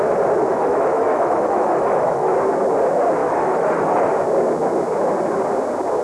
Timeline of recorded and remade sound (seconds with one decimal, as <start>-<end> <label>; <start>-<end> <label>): 0.0-0.5 recorded; 0.5-2.3 remade; 2.3-3.2 recorded; 3.2-4.1 remade; 4.1-6.0 recorded